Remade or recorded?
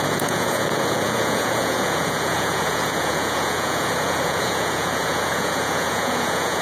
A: remade